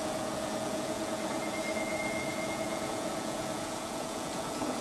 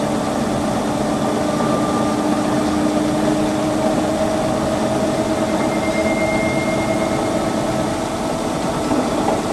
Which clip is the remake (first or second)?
first